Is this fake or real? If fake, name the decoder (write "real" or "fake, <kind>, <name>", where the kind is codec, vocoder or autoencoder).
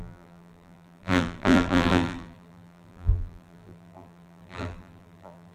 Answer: fake, vocoder, BigVGAN v2